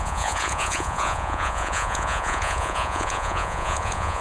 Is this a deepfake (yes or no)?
yes